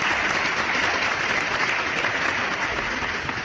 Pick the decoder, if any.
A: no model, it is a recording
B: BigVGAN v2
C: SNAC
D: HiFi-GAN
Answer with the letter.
B